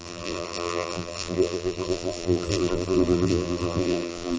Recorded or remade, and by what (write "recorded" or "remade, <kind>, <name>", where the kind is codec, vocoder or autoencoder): remade, vocoder, BigVGAN v2